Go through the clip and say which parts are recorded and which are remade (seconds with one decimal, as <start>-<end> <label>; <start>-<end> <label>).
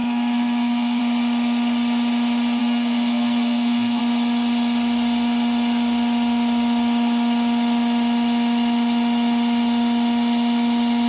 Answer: 0.0-1.0 remade; 1.0-2.6 recorded; 2.6-4.0 remade; 4.0-11.1 recorded